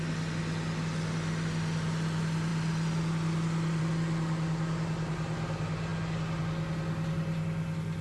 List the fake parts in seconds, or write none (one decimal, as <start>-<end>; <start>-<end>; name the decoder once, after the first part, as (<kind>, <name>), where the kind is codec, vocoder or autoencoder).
none